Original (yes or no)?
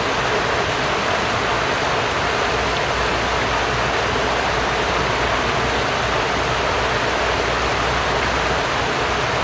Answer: yes